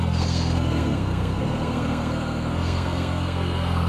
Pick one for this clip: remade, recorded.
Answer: remade